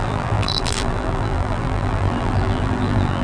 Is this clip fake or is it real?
fake